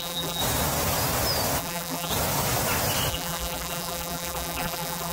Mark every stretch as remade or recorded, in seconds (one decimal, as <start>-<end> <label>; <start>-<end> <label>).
0.0-0.4 remade; 0.4-1.6 recorded; 1.6-2.1 remade; 2.1-3.1 recorded; 3.1-5.1 remade